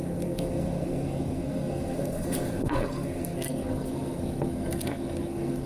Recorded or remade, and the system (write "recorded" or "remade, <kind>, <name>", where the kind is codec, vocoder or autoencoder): remade, codec, SNAC